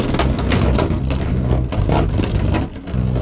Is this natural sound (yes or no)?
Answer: yes